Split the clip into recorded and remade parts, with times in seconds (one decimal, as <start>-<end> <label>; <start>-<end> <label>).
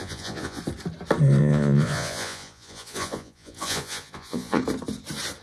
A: 0.0-0.6 remade; 0.6-1.4 recorded; 1.4-4.6 remade; 4.6-5.4 recorded